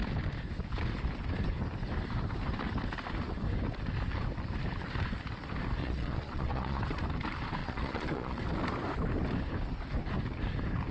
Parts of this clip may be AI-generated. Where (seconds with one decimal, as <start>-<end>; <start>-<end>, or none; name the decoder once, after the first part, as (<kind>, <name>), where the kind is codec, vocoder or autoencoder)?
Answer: 5.8-6.8 (vocoder, Vocos); 7.6-8.4